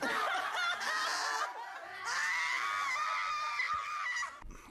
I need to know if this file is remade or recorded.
recorded